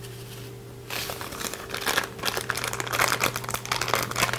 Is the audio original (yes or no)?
no